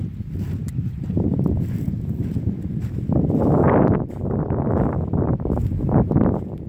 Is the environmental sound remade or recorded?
recorded